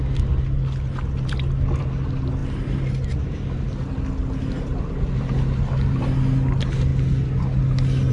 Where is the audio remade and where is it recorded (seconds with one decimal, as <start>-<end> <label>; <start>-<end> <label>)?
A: 0.0-8.1 recorded